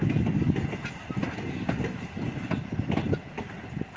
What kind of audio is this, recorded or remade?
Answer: recorded